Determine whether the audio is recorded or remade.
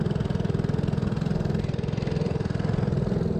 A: recorded